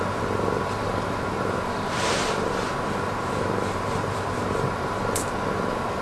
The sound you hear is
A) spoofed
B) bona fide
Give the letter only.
A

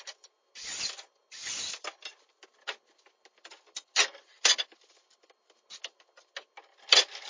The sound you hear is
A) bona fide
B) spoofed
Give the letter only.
A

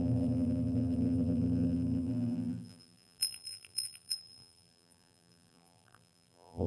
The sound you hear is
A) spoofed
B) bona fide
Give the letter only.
A